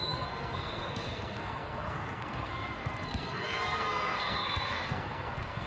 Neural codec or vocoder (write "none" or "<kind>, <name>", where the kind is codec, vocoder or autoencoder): codec, SNAC